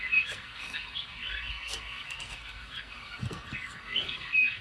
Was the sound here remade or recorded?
remade